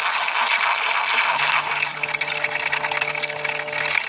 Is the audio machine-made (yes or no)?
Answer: no